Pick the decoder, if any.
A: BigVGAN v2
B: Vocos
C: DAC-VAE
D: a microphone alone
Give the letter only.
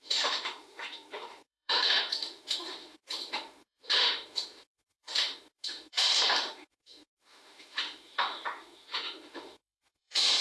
C